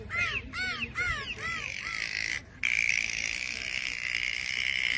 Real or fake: real